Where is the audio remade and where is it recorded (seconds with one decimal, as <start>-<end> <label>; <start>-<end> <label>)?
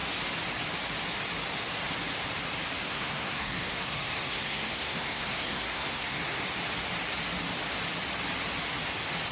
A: 0.0-2.9 recorded; 2.9-6.4 remade; 6.4-9.3 recorded